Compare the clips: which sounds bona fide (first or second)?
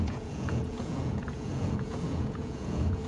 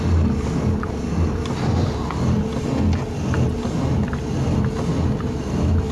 second